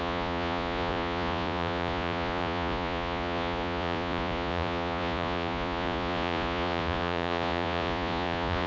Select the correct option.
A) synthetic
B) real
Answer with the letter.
A